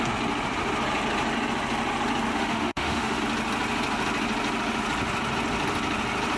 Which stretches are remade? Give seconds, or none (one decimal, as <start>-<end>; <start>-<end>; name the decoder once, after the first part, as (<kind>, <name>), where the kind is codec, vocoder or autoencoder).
2.3-3.2 (autoencoder, DAC-VAE)